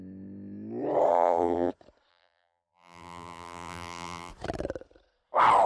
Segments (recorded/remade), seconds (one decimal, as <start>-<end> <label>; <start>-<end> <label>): 0.0-1.1 recorded; 1.1-1.7 remade; 1.7-2.1 recorded; 2.1-4.3 remade; 4.3-5.7 recorded